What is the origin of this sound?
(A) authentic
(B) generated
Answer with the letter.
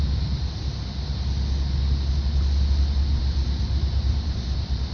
A